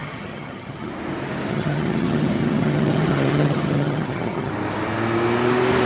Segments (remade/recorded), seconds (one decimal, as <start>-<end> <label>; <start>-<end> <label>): 0.0-0.9 remade; 0.9-1.5 recorded; 1.5-4.5 remade; 4.5-5.9 recorded